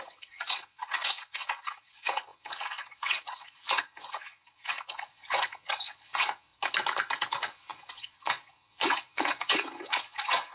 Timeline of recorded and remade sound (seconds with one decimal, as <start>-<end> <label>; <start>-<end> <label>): 0.0-6.5 remade; 6.5-7.3 recorded; 7.3-10.5 remade

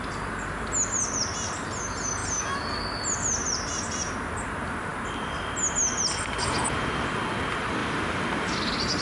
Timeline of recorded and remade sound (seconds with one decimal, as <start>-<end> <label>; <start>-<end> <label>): 0.0-3.4 recorded; 3.4-4.1 remade; 4.1-7.8 recorded; 7.8-9.0 remade